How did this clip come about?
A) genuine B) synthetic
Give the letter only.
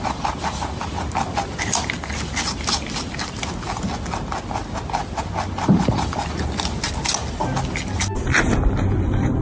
A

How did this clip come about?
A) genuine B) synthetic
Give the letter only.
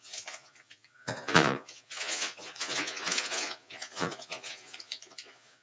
B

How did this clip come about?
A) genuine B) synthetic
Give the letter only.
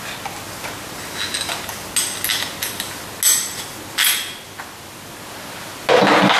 A